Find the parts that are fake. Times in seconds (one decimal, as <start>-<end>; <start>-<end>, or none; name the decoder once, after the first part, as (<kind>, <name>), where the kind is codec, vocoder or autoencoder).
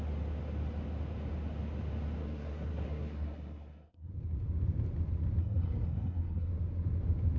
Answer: 2.2-4.1 (codec, SNAC); 5.4-6.5